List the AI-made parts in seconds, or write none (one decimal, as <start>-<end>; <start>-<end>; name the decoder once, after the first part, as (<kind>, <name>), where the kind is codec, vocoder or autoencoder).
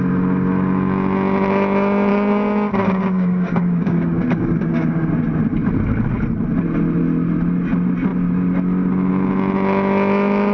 2.1-5.1 (codec, DAC)